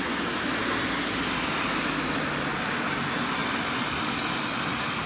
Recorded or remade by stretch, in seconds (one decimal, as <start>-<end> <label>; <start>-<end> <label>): 0.0-5.1 recorded